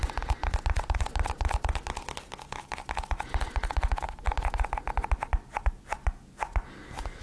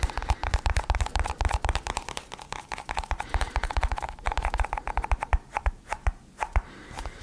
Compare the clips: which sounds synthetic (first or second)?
second